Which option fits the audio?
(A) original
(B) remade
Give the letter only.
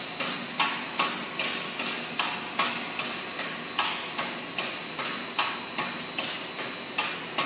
A